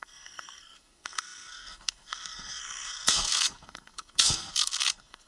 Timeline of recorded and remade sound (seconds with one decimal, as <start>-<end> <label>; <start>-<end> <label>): 0.0-5.3 remade